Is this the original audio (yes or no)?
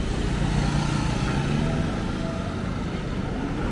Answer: yes